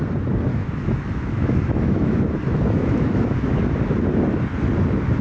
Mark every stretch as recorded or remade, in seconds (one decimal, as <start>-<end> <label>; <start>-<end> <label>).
0.0-0.5 recorded; 0.5-3.6 remade; 3.6-5.2 recorded